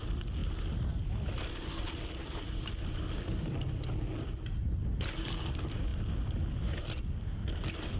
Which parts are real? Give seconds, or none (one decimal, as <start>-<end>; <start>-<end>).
0.0-8.0